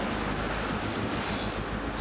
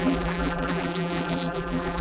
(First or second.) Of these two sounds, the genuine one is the first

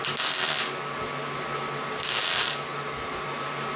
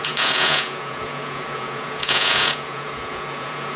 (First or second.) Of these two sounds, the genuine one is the first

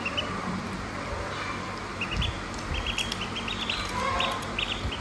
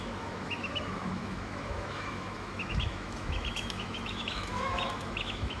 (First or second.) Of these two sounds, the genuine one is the first